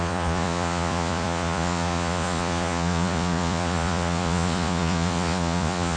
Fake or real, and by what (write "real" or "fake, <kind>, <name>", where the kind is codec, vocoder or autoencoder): fake, vocoder, Vocos